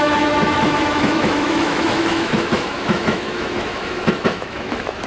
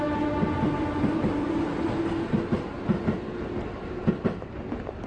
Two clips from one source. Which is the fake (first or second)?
first